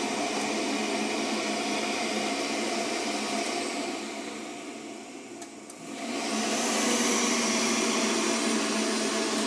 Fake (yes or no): no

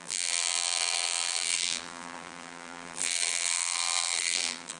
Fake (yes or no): yes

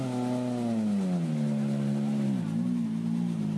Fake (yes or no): no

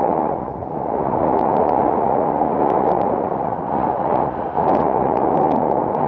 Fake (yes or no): yes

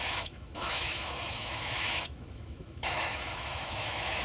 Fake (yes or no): yes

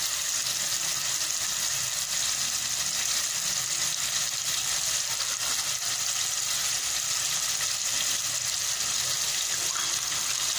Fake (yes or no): no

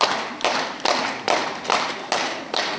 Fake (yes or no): no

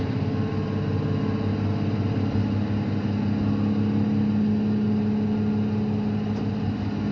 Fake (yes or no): no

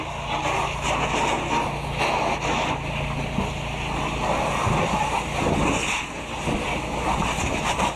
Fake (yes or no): no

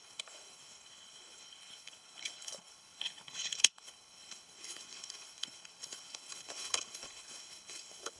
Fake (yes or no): yes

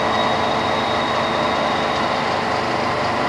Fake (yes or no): no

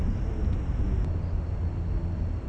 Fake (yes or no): no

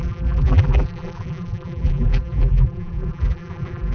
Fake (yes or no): yes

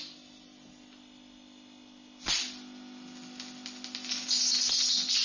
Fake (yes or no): no